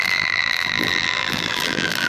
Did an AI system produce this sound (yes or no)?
yes